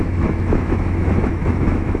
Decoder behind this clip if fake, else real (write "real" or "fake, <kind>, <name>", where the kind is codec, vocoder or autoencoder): fake, autoencoder, DAC-VAE